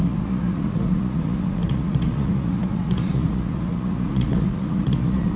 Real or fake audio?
fake